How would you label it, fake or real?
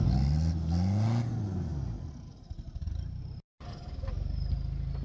real